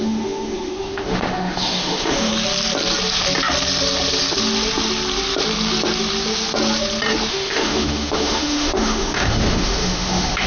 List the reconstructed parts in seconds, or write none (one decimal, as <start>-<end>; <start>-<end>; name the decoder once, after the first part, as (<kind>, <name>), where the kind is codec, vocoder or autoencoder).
0.0-2.3 (autoencoder, DAC-VAE); 7.3-10.5